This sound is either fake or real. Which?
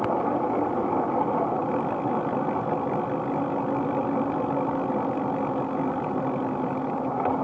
real